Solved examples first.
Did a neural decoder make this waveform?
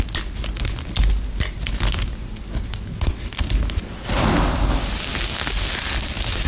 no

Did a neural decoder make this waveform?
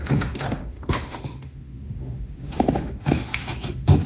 yes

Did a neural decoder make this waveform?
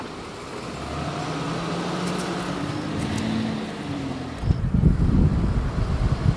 no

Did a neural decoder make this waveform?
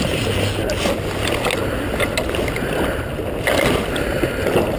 no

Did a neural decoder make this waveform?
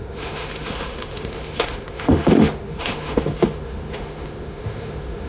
yes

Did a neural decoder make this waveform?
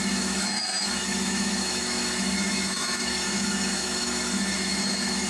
yes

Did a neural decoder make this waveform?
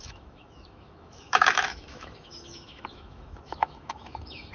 yes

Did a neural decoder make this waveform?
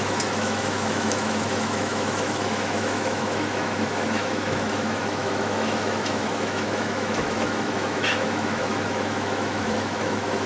yes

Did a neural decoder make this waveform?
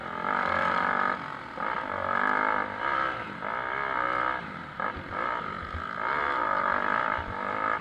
no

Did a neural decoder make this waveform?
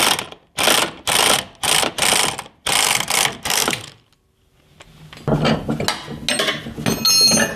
no